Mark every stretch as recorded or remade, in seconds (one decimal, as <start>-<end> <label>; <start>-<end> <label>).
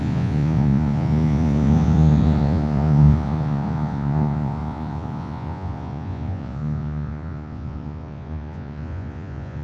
0.0-9.6 remade